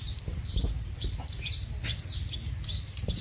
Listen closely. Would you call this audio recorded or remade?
recorded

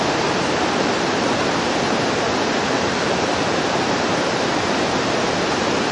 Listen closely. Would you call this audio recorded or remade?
remade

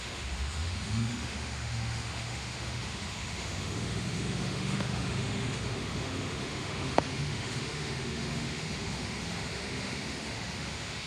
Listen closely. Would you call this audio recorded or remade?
remade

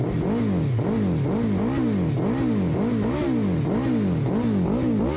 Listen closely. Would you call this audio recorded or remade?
recorded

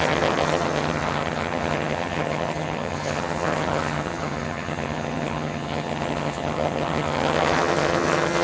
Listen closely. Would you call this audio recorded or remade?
remade